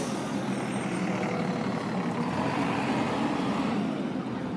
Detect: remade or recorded recorded